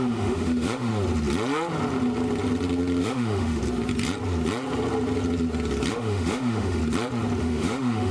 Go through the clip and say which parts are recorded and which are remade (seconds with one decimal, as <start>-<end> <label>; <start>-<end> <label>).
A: 0.0-0.9 remade; 0.9-3.0 recorded; 3.0-3.6 remade; 3.6-5.9 recorded; 5.9-6.8 remade; 6.8-7.4 recorded; 7.4-8.1 remade